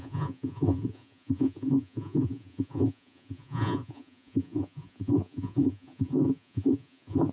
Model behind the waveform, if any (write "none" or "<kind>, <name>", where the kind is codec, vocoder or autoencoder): vocoder, Vocos